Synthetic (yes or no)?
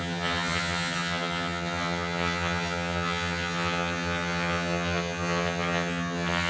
yes